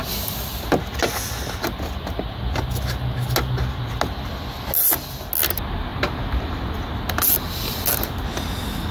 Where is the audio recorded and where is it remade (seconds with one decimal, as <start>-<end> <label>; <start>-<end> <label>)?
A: 0.0-8.9 recorded